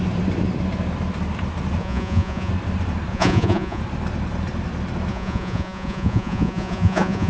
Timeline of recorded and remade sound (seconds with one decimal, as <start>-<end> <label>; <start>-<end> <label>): 0.0-1.8 recorded; 1.8-2.5 remade; 2.5-3.1 recorded; 3.1-3.8 remade; 3.8-5.1 recorded; 5.1-7.3 remade